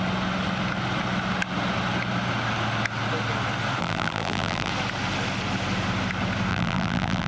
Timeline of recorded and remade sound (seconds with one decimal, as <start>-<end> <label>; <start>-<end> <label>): 0.0-3.8 recorded; 3.8-4.7 remade; 4.7-6.5 recorded; 6.5-7.3 remade